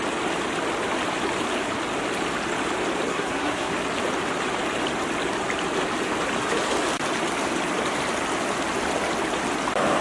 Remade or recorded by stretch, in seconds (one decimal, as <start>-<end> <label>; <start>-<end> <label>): 0.0-3.1 recorded; 3.1-3.7 remade; 3.7-10.0 recorded